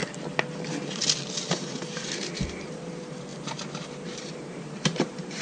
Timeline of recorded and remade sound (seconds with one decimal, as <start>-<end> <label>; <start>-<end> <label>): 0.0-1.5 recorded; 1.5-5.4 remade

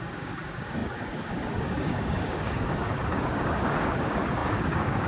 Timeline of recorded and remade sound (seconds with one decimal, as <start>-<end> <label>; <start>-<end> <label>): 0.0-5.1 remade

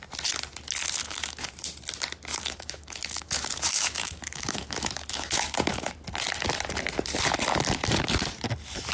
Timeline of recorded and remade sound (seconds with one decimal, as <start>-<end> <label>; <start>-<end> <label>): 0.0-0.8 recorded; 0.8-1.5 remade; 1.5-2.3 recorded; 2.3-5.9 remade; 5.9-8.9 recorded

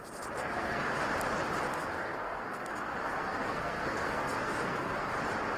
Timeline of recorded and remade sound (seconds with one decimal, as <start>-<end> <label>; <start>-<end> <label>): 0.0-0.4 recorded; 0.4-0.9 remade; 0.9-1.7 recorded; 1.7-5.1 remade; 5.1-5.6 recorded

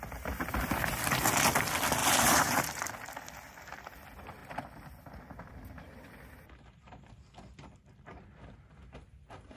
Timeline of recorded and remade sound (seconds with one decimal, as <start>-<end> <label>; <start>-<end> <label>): 0.0-2.0 recorded; 2.0-2.8 remade; 2.8-9.6 recorded

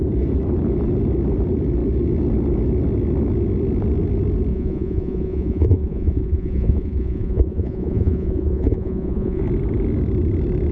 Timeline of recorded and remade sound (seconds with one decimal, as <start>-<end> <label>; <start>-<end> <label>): 0.0-4.5 recorded; 4.5-9.4 remade; 9.4-10.7 recorded